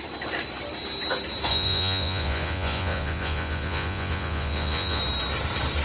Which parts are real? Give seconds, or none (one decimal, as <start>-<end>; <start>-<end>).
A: 0.0-1.5; 5.0-5.8